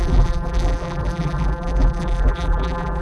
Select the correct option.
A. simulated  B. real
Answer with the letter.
A